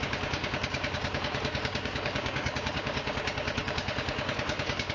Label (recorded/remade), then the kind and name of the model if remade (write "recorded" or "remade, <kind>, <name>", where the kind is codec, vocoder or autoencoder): remade, codec, DAC